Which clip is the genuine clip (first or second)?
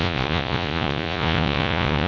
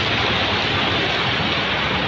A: second